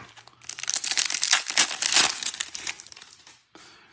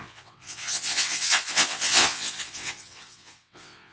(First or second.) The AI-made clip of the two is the second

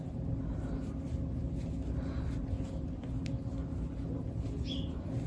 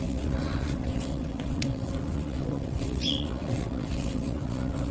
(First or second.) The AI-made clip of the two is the second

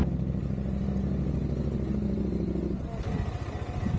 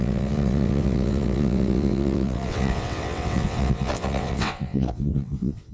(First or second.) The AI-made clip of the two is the second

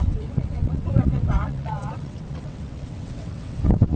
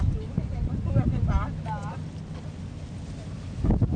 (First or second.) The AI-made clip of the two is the first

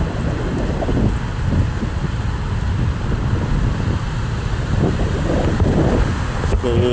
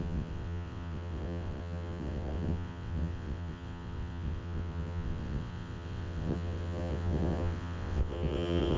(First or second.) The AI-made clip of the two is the second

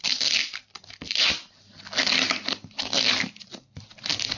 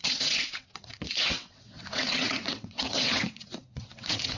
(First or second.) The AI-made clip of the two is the second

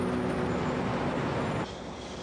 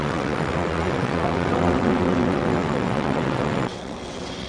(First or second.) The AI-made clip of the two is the second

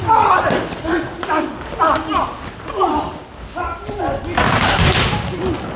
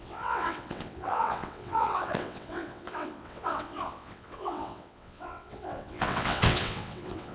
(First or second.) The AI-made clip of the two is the second